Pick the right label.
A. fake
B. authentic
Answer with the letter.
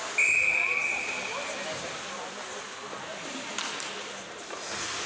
B